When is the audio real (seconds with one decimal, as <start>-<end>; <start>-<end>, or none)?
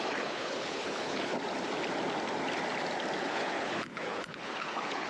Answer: 1.3-3.2